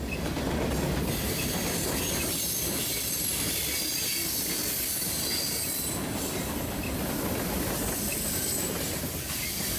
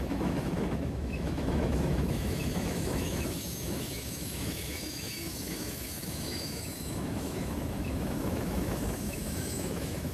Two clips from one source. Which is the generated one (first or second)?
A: second